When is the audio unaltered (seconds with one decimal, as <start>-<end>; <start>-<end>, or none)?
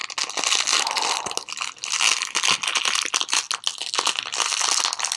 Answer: 0.0-5.2